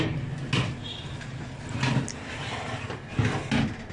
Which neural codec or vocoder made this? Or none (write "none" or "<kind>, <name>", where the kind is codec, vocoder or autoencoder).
none